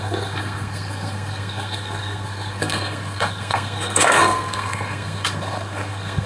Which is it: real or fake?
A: fake